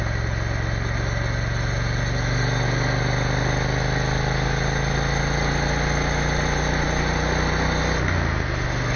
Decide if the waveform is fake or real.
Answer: real